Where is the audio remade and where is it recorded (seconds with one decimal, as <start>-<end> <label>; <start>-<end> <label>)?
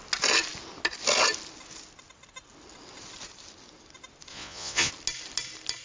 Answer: 0.0-4.3 recorded; 4.3-4.9 remade; 4.9-5.8 recorded